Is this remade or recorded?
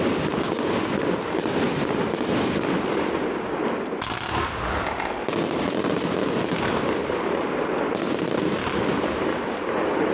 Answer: recorded